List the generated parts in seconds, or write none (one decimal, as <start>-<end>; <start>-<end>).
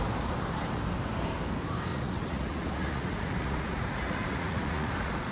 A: 1.9-5.3